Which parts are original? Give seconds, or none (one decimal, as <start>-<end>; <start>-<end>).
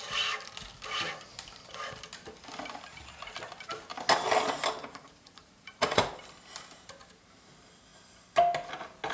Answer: 0.0-4.8; 6.1-9.1